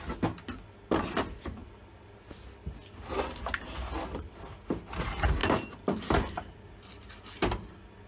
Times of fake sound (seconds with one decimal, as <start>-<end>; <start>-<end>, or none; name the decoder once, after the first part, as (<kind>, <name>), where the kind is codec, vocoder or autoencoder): none